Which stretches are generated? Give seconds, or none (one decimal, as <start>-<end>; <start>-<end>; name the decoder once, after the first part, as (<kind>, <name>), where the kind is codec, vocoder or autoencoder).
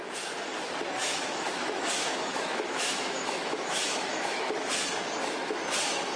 1.0-4.7 (autoencoder, DAC-VAE)